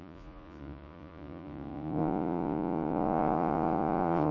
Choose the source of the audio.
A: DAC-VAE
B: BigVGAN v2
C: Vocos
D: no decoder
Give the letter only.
C